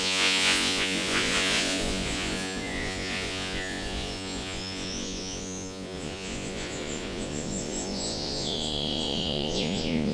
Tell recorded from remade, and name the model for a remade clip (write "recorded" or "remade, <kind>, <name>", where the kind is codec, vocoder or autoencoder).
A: remade, vocoder, Vocos